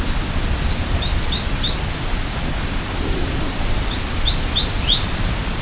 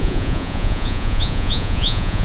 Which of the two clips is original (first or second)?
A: first